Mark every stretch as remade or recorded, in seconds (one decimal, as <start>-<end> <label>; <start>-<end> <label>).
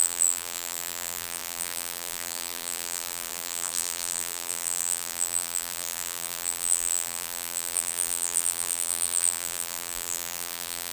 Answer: 0.0-10.9 remade